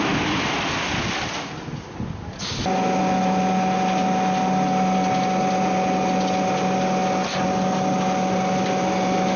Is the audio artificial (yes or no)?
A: no